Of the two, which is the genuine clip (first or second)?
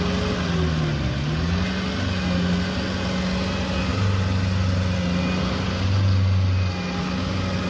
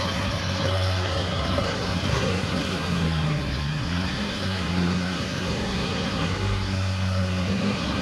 first